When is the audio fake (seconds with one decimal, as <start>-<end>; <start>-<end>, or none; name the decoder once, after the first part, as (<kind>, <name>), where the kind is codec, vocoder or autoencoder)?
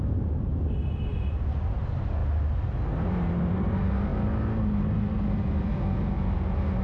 none